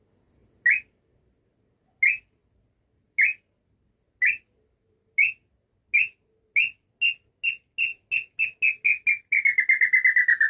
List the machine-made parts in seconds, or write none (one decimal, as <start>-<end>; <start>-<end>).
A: none